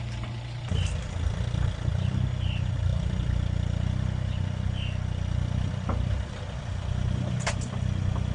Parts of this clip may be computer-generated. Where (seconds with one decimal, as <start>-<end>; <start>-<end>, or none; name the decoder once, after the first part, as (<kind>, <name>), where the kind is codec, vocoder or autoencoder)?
none